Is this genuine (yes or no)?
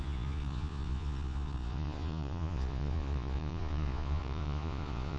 no